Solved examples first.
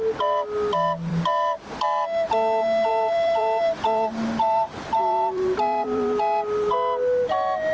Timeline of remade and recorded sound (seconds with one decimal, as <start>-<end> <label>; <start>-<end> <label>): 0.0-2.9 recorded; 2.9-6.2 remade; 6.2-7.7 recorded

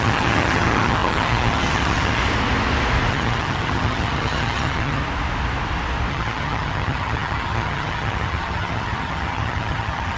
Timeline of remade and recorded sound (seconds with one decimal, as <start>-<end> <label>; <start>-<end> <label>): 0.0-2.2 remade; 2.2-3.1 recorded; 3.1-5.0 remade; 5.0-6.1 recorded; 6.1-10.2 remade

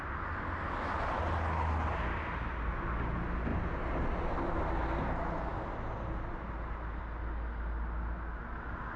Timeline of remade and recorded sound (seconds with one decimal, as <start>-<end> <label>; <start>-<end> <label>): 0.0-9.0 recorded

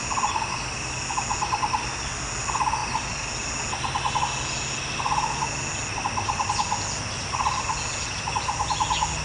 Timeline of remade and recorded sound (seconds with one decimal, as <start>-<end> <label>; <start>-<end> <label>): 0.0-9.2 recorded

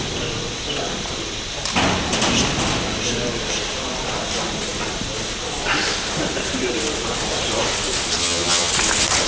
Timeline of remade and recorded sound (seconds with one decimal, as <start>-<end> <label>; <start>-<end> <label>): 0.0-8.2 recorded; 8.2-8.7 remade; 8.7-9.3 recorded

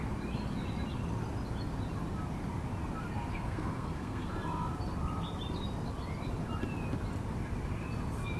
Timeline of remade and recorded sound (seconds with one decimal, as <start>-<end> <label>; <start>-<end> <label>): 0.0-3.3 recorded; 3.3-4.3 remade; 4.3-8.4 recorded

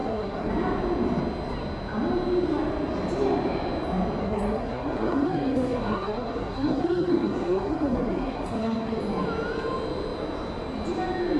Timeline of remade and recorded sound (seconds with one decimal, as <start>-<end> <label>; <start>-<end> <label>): 0.0-0.5 remade; 0.5-4.2 recorded; 4.2-9.0 remade; 9.0-11.4 recorded

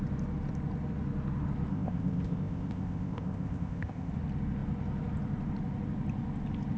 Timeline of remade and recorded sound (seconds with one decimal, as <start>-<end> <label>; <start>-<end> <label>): 0.0-1.7 recorded; 1.7-4.1 remade; 4.1-6.8 recorded